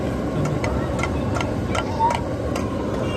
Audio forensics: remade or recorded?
recorded